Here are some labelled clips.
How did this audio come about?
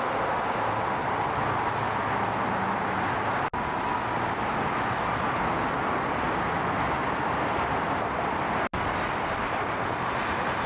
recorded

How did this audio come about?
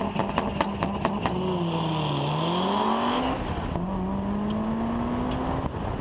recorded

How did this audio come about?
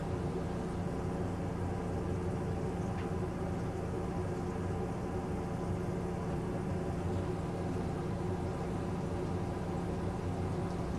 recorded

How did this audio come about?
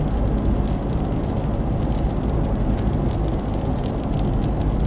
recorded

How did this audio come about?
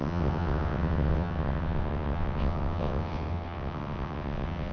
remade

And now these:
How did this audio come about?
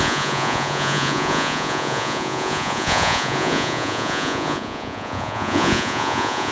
remade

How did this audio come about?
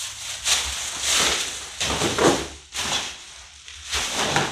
recorded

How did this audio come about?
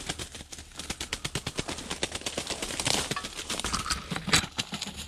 recorded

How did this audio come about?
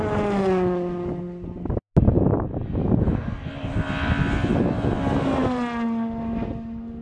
recorded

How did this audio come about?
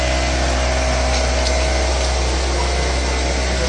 recorded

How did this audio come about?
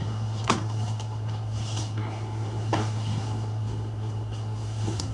remade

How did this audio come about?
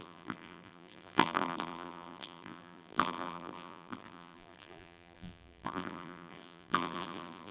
remade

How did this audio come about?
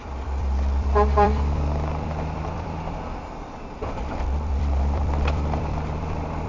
remade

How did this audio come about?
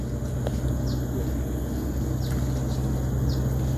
recorded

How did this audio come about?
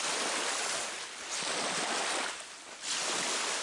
recorded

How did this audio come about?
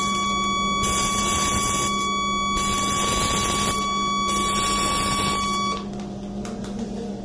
recorded